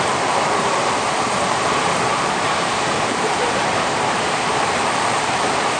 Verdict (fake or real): fake